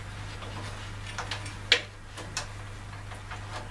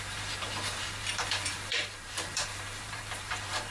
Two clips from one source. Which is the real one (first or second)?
first